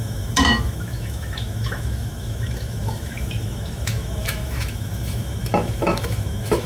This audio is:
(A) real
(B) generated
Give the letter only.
B